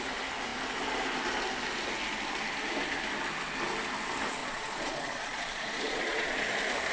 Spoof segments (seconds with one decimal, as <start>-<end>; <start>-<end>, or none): 4.4-6.4